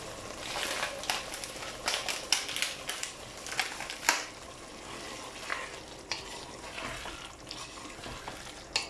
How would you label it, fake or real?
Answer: real